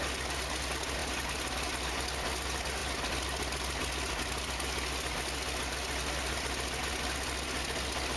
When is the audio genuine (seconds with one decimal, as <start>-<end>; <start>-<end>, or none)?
0.0-8.2